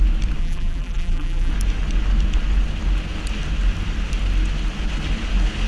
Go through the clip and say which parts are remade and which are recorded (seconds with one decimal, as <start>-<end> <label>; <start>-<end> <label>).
0.0-0.4 recorded; 0.4-1.5 remade; 1.5-5.7 recorded